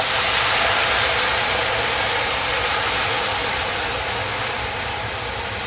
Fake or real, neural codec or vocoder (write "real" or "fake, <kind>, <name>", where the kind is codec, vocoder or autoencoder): real